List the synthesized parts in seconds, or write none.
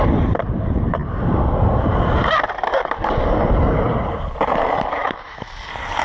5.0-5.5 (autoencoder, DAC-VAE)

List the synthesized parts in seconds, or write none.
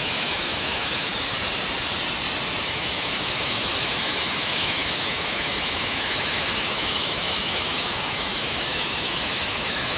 0.0-1.1 (autoencoder, DAC-VAE); 2.6-10.0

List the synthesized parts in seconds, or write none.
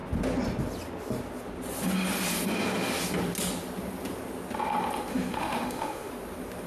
5.1-6.1 (autoencoder, DAC-VAE)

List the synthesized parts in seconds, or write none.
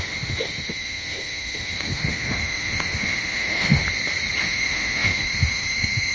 0.0-3.8 (autoencoder, DAC-VAE); 4.4-6.1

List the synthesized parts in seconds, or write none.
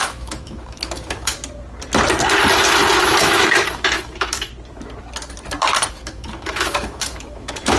0.0-1.4 (autoencoder, DAC-VAE); 3.0-4.5; 5.9-7.8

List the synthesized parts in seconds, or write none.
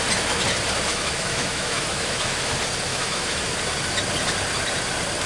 0.9-2.5 (autoencoder, DAC-VAE); 2.9-3.5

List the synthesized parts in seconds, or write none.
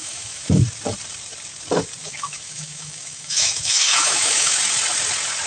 0.0-0.6 (autoencoder, DAC-VAE); 2.0-4.6